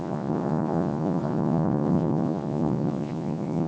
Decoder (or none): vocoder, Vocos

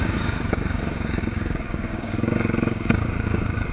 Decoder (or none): codec, DAC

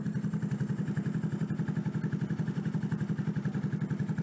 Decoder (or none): none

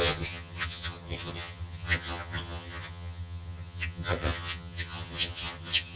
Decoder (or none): vocoder, HiFi-GAN